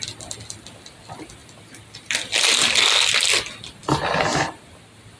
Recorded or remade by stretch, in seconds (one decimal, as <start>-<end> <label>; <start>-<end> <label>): 0.0-5.2 recorded